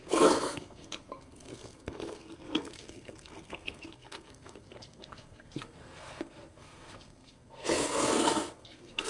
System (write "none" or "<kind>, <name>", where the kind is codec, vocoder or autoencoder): codec, SNAC